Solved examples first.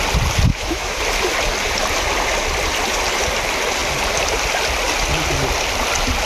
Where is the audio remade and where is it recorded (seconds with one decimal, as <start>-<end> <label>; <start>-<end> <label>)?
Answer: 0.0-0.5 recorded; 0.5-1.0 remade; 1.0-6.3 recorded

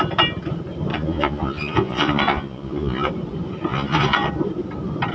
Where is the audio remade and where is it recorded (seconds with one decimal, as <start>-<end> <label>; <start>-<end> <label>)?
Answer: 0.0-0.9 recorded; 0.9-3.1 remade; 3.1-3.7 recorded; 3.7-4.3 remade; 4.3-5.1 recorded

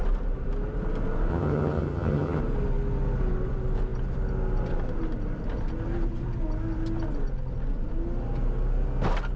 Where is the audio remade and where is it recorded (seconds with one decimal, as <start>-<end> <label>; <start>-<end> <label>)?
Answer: 0.0-1.3 recorded; 1.3-2.4 remade; 2.4-9.4 recorded

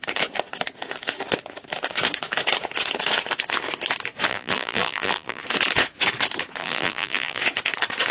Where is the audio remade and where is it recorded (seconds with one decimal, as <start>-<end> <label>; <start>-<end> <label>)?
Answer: 0.0-4.3 recorded; 4.3-5.4 remade; 5.4-6.6 recorded; 6.6-7.4 remade; 7.4-8.1 recorded